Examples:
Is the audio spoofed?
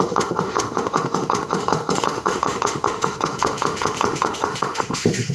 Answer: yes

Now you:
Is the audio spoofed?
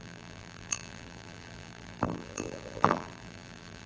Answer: yes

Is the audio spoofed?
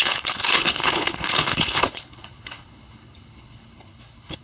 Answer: yes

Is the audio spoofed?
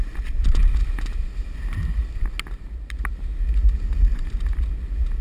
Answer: no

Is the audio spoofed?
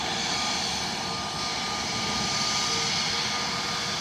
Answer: no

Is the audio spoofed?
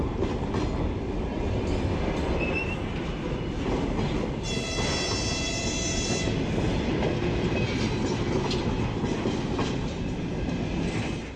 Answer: no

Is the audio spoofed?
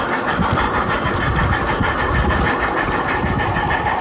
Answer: no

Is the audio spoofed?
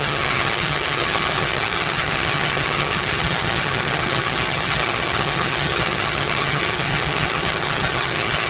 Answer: yes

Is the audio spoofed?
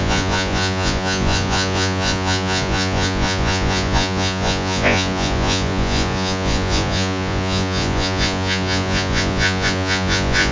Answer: yes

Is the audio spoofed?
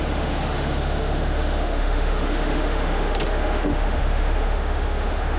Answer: yes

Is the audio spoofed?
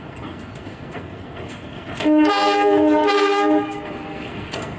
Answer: yes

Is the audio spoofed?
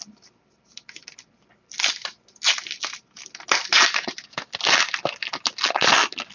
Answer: no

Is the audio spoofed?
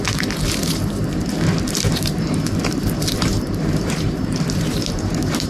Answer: yes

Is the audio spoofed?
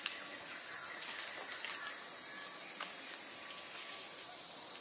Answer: no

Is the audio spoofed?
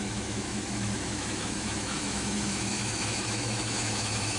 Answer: yes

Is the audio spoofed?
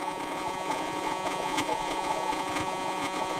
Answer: yes